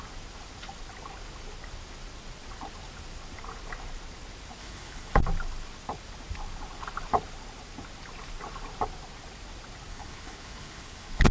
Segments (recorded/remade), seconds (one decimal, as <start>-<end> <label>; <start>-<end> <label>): 0.0-4.6 recorded; 4.6-5.2 remade; 5.2-9.9 recorded; 9.9-11.3 remade